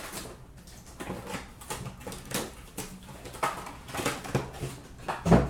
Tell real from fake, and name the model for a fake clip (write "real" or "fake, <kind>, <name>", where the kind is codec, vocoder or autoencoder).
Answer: real